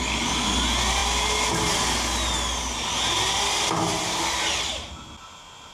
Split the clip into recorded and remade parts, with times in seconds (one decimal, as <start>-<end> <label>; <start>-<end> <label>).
0.0-5.7 recorded